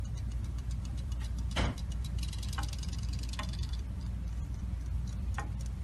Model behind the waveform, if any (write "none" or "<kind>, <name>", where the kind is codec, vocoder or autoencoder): vocoder, BigVGAN v2